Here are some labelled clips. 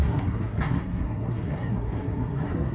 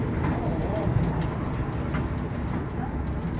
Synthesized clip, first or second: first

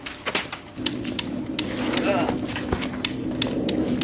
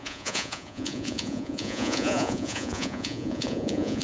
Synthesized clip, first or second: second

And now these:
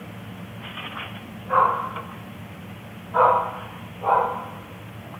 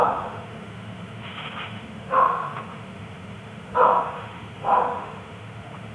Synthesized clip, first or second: second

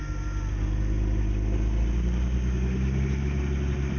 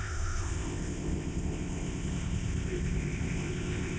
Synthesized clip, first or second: second